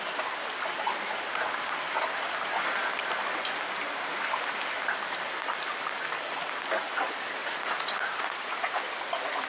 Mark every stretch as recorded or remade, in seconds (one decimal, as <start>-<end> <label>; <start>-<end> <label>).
0.0-7.4 recorded; 7.4-8.8 remade; 8.8-9.5 recorded